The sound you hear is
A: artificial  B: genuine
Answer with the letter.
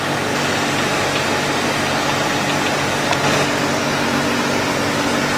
B